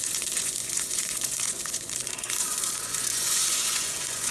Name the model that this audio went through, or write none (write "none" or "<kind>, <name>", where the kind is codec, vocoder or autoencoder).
vocoder, Vocos